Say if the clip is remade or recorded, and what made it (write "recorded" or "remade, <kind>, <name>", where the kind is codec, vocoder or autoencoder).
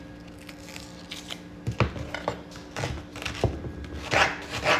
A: recorded